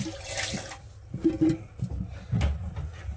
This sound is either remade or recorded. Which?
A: recorded